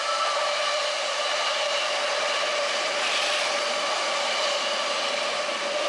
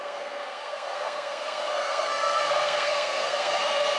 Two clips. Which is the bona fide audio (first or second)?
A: first